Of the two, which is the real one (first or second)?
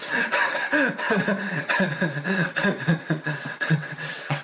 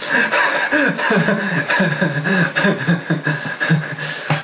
second